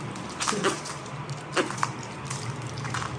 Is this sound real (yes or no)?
yes